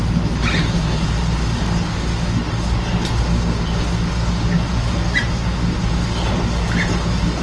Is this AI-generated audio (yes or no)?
no